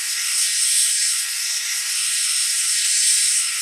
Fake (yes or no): yes